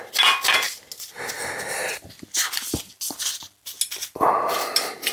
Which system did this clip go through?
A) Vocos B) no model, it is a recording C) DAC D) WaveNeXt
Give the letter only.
B